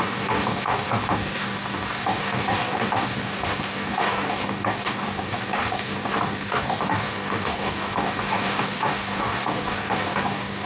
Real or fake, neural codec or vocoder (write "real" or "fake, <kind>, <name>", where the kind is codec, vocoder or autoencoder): fake, codec, DAC